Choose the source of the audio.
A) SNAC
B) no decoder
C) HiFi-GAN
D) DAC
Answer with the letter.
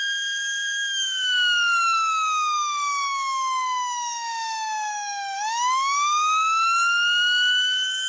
D